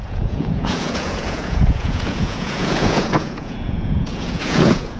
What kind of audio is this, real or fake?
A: fake